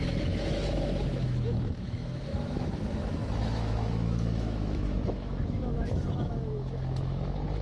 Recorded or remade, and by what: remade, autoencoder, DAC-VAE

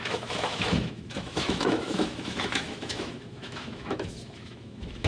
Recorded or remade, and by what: remade, autoencoder, DAC-VAE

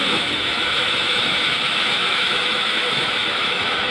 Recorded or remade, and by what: remade, autoencoder, DAC-VAE